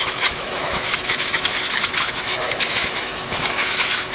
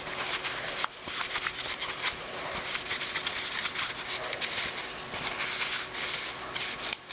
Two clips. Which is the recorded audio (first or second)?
second